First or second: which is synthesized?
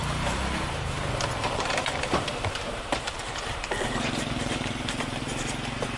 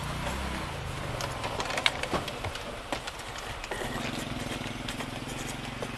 first